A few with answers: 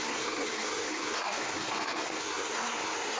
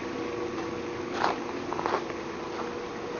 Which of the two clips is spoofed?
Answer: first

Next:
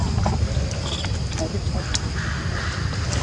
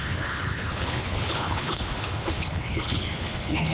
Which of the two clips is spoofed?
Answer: second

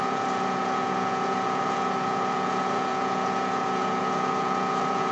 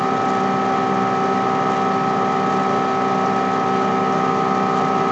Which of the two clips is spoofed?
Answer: first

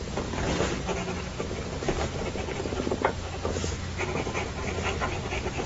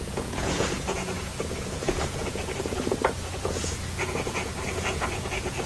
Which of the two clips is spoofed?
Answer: second